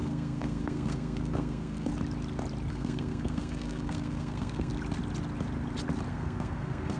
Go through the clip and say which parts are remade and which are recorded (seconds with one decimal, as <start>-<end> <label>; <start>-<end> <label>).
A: 0.0-1.9 remade; 1.9-2.7 recorded; 2.7-4.7 remade; 4.7-6.1 recorded; 6.1-7.0 remade